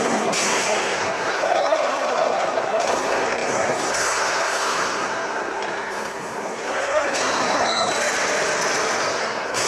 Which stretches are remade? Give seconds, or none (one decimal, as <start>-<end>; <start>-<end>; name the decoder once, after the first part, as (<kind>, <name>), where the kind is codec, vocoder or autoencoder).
0.0-7.9 (codec, SNAC); 9.1-9.7